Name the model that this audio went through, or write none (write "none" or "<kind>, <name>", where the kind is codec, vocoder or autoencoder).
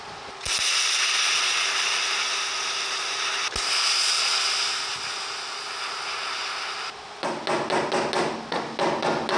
none